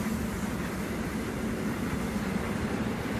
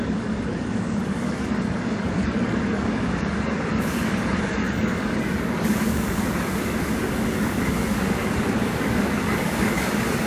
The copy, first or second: second